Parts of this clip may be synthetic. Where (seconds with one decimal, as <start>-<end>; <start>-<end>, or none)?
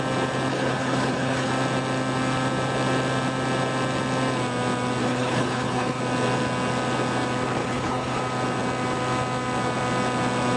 0.5-1.5; 5.0-6.0; 7.6-8.2